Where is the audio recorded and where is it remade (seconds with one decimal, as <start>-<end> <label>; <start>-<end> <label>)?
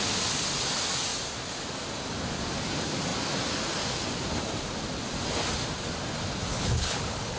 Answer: 0.0-6.5 recorded; 6.5-7.4 remade